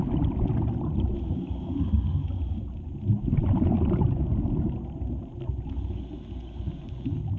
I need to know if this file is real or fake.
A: real